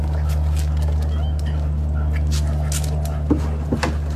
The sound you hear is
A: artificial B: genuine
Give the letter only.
B